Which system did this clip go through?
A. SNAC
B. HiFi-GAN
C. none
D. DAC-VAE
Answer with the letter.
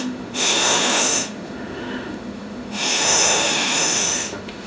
D